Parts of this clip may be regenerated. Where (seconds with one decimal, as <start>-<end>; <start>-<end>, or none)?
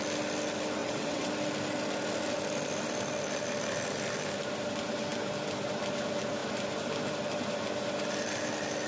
0.8-1.3